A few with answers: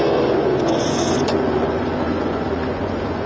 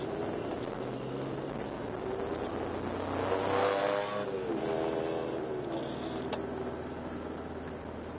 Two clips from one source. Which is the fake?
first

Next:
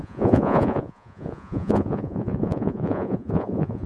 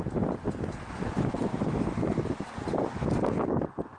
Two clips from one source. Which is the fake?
first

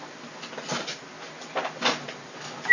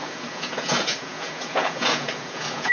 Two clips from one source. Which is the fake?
second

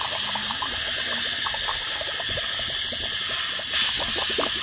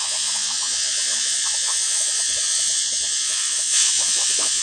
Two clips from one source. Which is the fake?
second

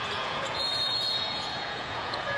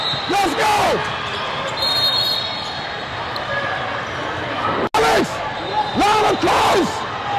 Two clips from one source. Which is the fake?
first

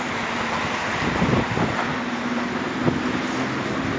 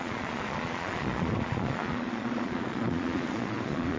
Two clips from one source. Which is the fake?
second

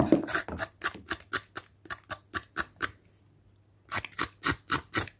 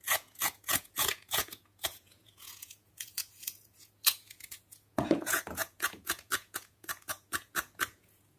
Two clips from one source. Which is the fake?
second